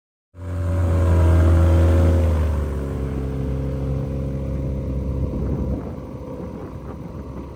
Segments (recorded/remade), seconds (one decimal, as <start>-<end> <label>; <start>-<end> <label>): 0.0-7.6 recorded